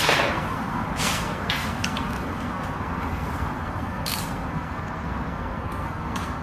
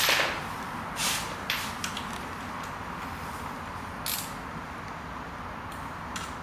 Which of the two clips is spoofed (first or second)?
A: first